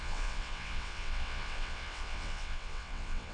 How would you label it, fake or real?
fake